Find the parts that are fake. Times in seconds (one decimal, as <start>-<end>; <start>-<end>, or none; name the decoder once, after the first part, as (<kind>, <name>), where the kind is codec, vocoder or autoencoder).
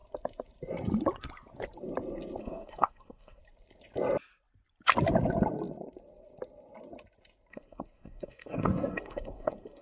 2.4-3.4 (codec, SNAC); 7.5-9.8